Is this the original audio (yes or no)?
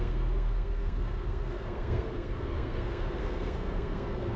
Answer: no